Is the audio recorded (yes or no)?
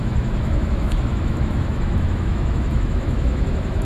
no